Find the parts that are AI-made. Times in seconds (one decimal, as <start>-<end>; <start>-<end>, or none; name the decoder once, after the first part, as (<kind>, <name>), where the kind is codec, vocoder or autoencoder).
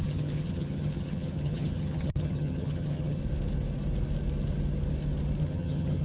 0.0-3.2 (vocoder, HiFi-GAN); 5.4-6.0